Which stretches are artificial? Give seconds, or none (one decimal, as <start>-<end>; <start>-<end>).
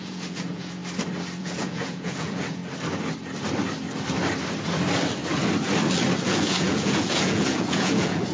0.0-0.8; 1.4-2.6; 6.2-8.3